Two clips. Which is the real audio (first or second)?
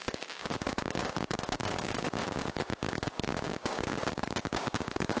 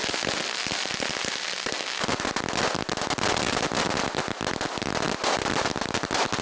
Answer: second